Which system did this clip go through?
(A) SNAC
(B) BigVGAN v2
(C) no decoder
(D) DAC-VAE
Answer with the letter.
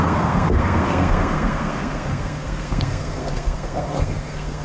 A